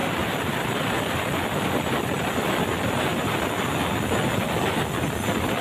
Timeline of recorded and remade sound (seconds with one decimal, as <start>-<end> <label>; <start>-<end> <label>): 0.0-1.7 remade; 1.7-3.1 recorded; 3.1-3.7 remade; 3.7-5.6 recorded